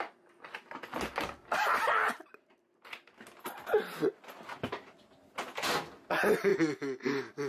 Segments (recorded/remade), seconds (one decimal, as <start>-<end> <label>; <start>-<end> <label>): 0.0-7.5 recorded